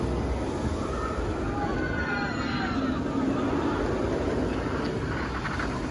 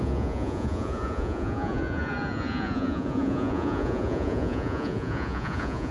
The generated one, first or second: second